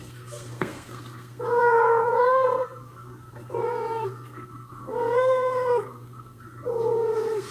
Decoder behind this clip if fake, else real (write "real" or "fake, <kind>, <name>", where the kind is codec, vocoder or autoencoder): fake, codec, SNAC